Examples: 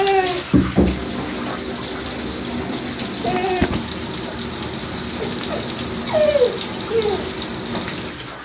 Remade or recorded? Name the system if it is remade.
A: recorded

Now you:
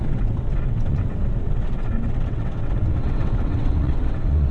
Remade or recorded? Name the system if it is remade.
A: remade, vocoder, WaveNeXt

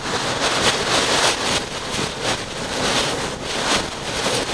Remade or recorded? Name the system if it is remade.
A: recorded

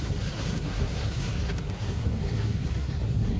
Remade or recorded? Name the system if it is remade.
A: remade, codec, SNAC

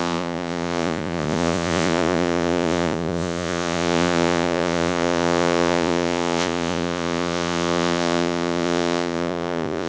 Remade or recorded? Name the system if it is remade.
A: remade, vocoder, Vocos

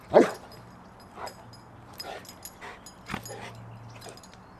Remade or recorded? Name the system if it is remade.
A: recorded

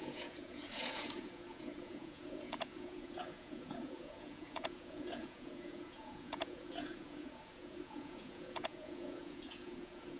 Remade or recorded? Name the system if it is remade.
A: remade, vocoder, Vocos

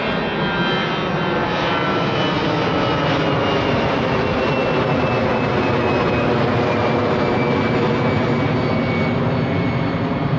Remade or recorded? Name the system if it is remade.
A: recorded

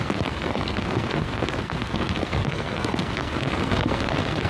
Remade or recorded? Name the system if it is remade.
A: remade, codec, SNAC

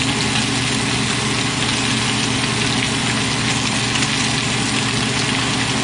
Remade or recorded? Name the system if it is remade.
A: recorded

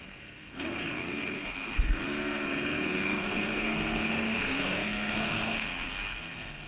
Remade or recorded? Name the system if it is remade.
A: remade, codec, SNAC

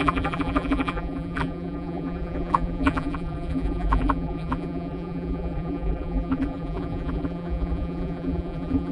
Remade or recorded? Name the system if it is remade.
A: remade, vocoder, BigVGAN v2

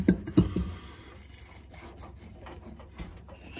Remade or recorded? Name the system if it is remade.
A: recorded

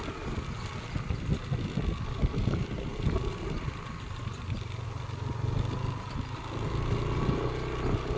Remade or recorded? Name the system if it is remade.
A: recorded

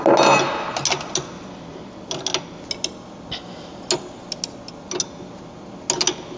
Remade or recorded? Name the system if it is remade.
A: recorded